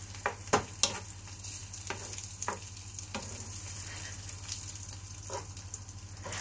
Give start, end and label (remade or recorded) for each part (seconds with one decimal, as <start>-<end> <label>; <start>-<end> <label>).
0.0-6.4 recorded